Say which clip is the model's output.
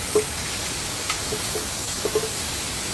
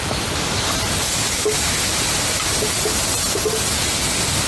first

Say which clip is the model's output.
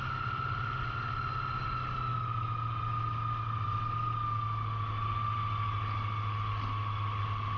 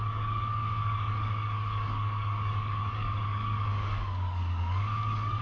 second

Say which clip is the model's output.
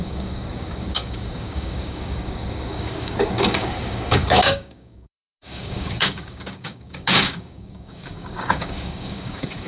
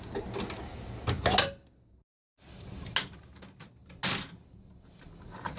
first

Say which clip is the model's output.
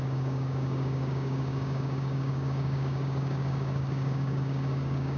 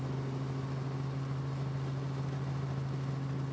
first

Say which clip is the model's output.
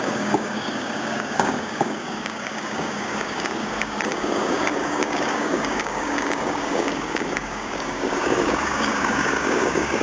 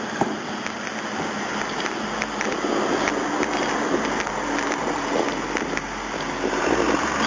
first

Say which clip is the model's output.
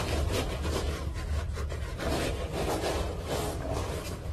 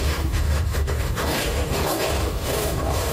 second